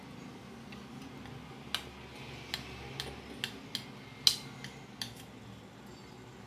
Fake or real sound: real